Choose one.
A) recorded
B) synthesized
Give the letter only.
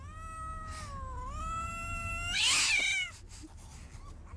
A